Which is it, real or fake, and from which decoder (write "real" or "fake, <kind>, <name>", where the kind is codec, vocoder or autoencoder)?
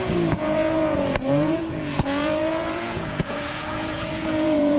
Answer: fake, vocoder, Vocos